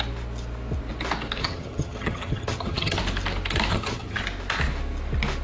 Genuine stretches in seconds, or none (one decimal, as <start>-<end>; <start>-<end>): 0.0-1.4; 3.0-3.7; 4.2-5.4